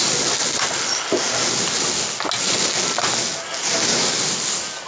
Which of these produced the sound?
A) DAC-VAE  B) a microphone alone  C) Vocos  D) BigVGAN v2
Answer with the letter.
B